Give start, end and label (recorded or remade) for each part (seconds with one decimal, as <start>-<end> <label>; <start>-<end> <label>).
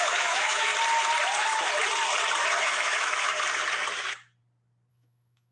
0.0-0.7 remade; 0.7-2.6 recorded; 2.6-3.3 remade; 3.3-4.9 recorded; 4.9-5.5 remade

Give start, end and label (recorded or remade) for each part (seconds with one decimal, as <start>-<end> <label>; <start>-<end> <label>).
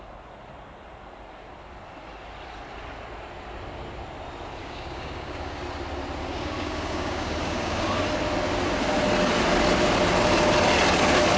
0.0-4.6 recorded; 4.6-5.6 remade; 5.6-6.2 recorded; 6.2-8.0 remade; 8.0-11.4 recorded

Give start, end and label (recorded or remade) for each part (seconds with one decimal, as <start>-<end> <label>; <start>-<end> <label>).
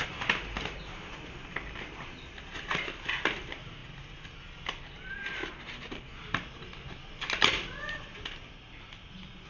0.0-9.5 recorded